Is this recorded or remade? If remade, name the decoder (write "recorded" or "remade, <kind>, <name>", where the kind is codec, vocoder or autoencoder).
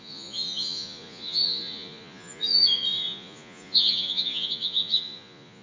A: remade, vocoder, Vocos